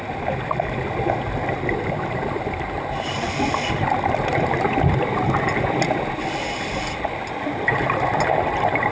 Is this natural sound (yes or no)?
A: yes